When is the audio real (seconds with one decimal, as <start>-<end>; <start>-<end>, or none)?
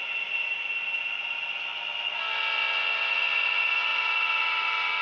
0.0-5.0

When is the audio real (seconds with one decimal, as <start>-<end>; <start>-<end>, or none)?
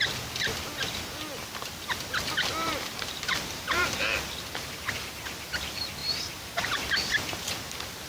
0.0-2.6; 4.0-6.0; 6.7-8.1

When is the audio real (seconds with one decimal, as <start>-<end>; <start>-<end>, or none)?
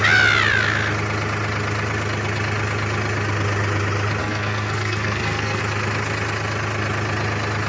0.0-4.2; 5.6-7.7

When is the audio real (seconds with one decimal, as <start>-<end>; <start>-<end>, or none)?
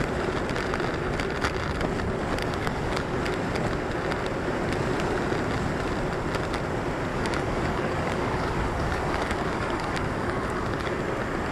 0.0-2.4; 3.2-7.1; 11.0-11.5